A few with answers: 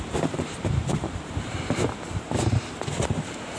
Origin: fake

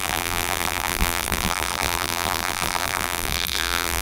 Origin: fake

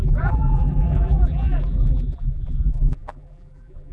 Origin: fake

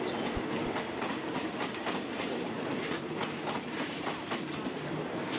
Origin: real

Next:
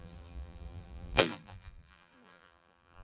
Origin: fake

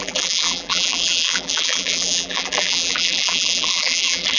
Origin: fake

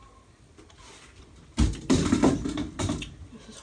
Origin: real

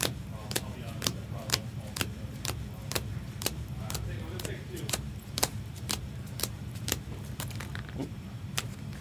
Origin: fake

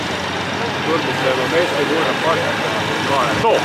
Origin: fake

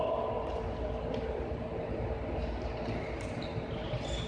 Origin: fake